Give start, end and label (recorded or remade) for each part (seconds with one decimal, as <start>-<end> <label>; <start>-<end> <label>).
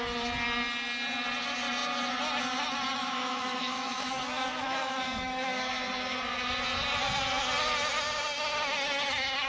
0.0-3.0 recorded; 3.0-5.7 remade; 5.7-9.5 recorded